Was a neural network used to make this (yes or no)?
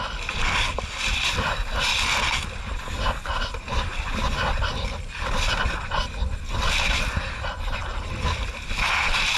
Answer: no